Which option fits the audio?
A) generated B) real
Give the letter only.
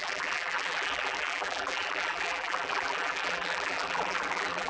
A